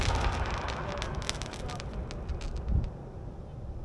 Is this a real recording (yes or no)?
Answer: yes